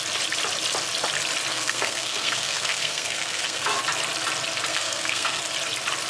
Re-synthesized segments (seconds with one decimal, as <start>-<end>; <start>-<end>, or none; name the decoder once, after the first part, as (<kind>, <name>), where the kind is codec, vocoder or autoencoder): 1.5-3.8 (codec, SNAC); 4.7-5.4